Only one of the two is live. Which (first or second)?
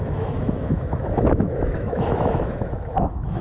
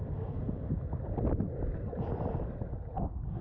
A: second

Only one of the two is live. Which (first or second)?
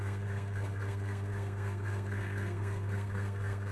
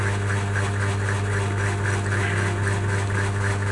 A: second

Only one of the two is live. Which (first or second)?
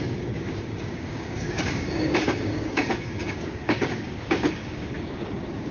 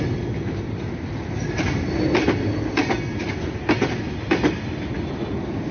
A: second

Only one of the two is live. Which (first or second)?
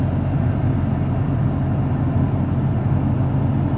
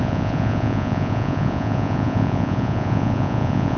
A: first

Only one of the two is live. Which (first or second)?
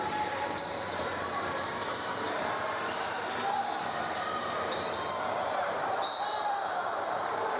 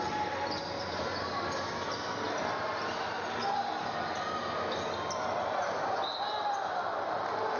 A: second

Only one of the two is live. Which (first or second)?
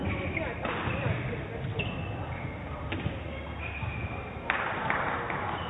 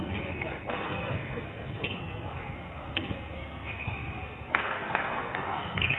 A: first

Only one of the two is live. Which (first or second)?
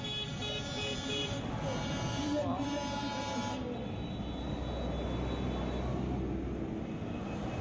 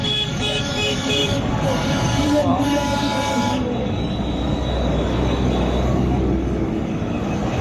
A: first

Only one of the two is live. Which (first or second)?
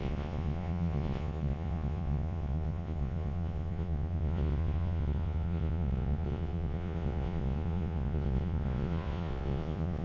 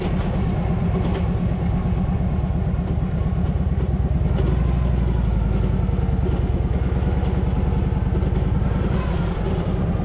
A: second